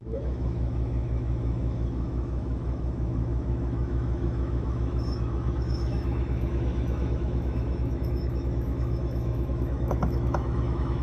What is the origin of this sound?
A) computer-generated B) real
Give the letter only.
A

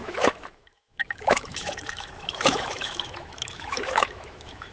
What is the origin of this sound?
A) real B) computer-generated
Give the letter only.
B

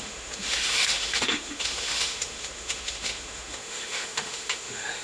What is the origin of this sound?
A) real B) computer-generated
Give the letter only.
B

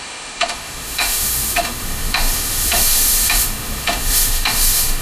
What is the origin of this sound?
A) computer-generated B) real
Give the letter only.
A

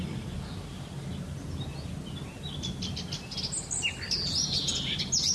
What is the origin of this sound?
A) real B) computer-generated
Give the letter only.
A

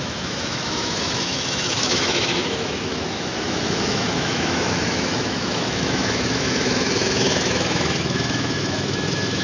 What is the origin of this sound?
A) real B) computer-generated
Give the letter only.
B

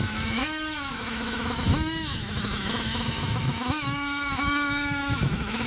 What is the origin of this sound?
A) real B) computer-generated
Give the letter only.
B